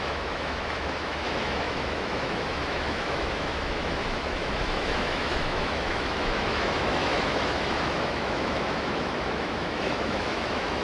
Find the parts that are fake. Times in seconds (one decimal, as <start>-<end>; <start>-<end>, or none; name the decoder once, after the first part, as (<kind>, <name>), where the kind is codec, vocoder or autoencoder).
0.0-10.8 (autoencoder, DAC-VAE)